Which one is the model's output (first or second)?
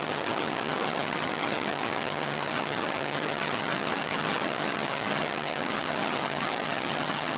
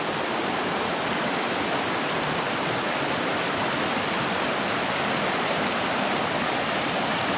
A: first